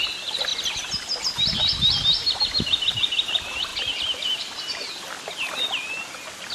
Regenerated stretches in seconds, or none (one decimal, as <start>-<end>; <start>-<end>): none